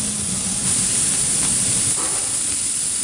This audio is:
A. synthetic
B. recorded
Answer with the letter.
B